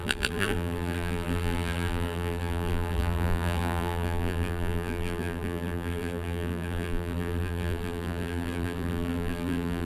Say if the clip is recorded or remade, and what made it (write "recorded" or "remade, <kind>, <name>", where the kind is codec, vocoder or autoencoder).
remade, vocoder, BigVGAN v2